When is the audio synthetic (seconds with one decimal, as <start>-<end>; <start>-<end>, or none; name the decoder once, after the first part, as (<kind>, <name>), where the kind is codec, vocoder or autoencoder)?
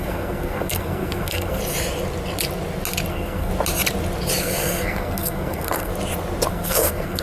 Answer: 0.0-1.6 (codec, SNAC); 3.1-3.5; 4.4-5.9; 6.5-7.2